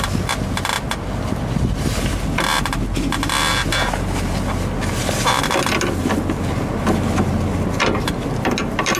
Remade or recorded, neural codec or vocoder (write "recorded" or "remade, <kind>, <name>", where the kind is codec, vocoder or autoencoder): recorded